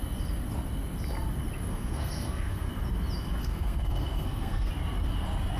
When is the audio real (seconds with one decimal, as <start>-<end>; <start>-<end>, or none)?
0.0-1.7; 2.7-3.4; 4.7-5.6